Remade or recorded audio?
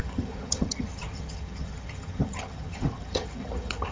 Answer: remade